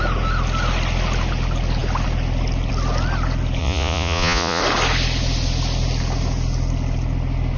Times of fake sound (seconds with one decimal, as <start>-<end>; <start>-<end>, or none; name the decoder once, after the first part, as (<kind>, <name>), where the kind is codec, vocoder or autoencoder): 3.6-4.6 (vocoder, Vocos)